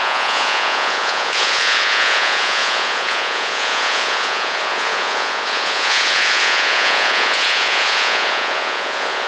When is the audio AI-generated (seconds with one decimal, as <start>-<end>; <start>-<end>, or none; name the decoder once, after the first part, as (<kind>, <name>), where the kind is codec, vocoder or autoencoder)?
0.0-9.3 (vocoder, Vocos)